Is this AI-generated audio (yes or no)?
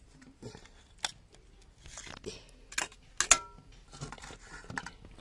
no